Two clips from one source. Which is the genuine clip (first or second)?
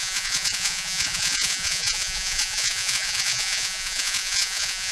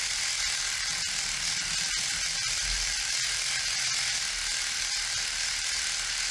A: second